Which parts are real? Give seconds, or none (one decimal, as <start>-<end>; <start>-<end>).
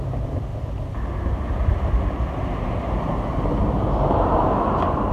0.5-3.6